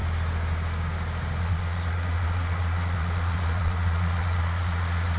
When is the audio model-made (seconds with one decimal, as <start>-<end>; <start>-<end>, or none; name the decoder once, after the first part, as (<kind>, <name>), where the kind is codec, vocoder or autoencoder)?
1.4-5.2 (vocoder, Vocos)